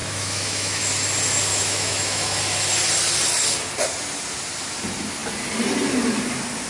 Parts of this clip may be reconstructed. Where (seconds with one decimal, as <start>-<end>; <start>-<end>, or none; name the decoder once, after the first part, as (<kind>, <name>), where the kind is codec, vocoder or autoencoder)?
0.0-0.8 (autoencoder, DAC-VAE); 1.5-2.4

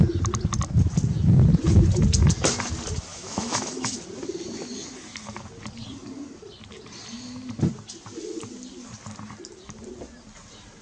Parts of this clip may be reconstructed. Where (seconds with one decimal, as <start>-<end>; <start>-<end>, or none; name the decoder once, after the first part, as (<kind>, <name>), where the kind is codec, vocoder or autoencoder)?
3.1-4.0 (autoencoder, DAC-VAE)

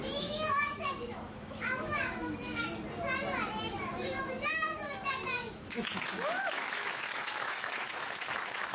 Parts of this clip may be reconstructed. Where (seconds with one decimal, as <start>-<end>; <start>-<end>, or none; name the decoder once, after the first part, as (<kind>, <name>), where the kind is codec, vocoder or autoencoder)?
0.0-2.7 (autoencoder, DAC-VAE); 3.7-8.7

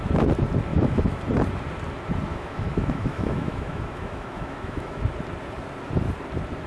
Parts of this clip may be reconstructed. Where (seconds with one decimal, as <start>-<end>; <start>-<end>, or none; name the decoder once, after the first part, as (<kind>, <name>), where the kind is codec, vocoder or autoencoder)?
0.7-1.2 (autoencoder, DAC-VAE); 2.3-5.0

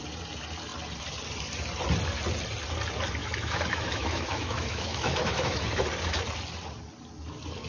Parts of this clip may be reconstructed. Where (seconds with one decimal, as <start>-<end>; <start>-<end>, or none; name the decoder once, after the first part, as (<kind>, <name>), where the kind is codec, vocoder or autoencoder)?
3.2-5.9 (autoencoder, DAC-VAE)